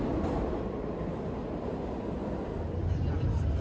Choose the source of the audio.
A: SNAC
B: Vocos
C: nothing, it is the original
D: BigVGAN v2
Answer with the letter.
C